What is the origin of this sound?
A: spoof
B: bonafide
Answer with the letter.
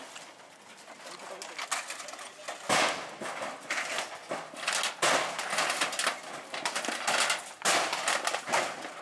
B